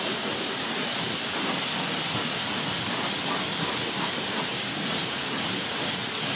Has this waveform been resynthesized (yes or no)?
no